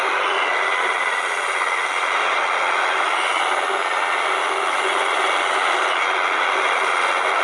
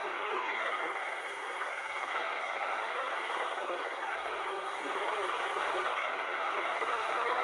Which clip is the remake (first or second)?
second